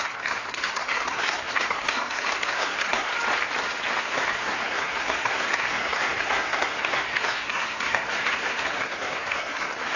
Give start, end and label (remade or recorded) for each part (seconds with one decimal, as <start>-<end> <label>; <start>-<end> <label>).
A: 0.0-3.1 remade; 3.1-4.0 recorded; 4.0-10.0 remade